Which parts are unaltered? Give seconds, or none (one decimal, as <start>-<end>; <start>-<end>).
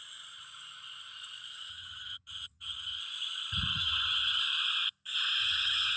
0.0-1.7; 3.0-3.7; 4.4-5.4